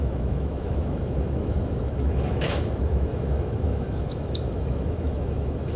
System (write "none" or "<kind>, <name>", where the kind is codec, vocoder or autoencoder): autoencoder, DAC-VAE